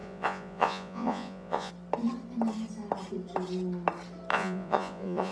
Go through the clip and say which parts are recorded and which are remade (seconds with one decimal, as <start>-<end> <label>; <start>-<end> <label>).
0.0-1.7 remade; 1.7-4.3 recorded; 4.3-5.3 remade